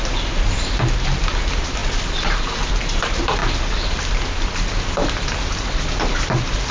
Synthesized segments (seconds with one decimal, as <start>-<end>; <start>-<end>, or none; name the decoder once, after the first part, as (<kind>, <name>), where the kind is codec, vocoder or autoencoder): none